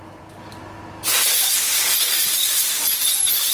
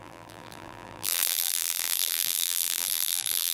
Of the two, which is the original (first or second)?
first